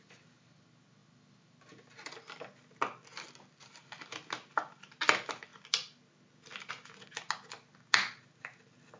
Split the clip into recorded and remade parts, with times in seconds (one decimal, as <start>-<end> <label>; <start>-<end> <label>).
0.0-9.0 recorded